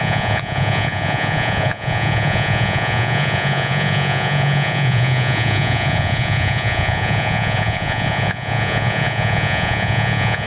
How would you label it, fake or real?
fake